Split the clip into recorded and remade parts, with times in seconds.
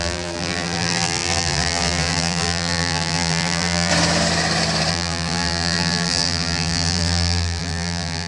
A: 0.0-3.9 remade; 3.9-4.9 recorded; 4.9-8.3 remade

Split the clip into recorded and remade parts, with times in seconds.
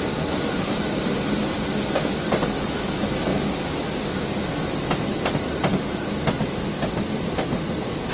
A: 0.0-3.3 remade; 3.3-5.0 recorded; 5.0-5.6 remade; 5.6-6.9 recorded; 6.9-8.1 remade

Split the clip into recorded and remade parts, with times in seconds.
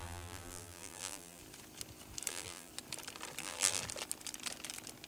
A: 0.0-1.4 remade; 1.4-2.3 recorded; 2.3-2.7 remade; 2.7-3.4 recorded; 3.4-3.8 remade; 3.8-5.1 recorded